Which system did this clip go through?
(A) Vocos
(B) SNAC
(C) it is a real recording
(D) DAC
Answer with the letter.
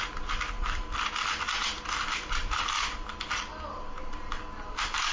C